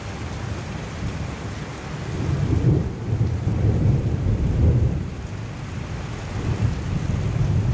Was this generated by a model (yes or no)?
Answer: no